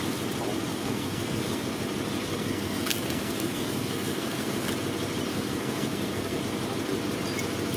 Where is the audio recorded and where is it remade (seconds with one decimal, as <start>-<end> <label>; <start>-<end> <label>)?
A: 0.0-0.7 recorded; 0.7-1.7 remade; 1.7-2.3 recorded; 2.3-4.7 remade; 4.7-5.3 recorded; 5.3-6.4 remade; 6.4-7.8 recorded